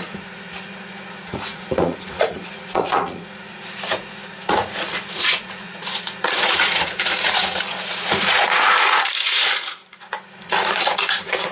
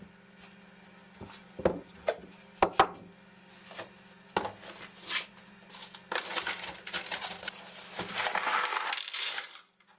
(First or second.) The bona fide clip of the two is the second